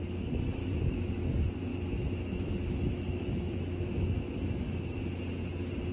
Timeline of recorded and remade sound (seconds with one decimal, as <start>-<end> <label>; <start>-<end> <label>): 0.0-0.6 recorded; 0.6-1.1 remade; 1.1-1.7 recorded; 1.7-5.0 remade; 5.0-5.9 recorded